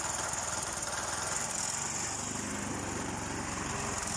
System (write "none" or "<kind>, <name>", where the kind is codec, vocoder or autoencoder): none